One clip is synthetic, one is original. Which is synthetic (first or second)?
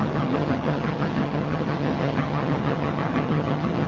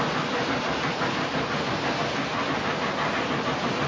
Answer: first